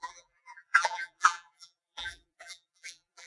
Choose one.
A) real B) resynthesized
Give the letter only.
B